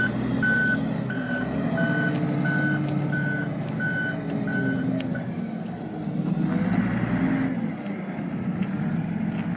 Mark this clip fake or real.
real